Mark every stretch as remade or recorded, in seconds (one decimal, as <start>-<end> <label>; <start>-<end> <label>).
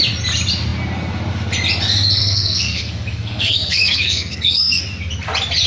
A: 0.0-2.2 recorded; 2.2-4.8 remade; 4.8-5.7 recorded